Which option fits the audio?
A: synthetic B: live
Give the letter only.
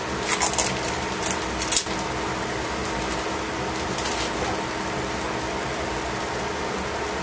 B